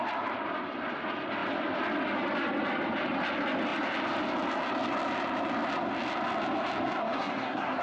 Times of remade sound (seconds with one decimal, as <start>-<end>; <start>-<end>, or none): 7.0-7.8